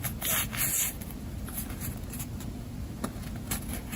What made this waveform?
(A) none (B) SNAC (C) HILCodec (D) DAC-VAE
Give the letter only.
A